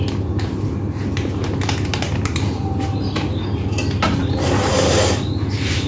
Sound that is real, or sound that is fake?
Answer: real